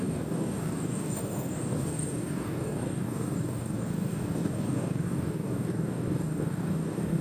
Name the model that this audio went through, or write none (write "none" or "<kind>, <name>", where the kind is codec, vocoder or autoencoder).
codec, DAC